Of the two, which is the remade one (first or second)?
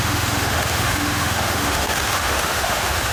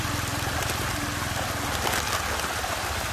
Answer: first